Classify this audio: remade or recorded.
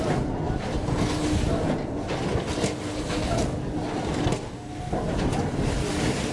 recorded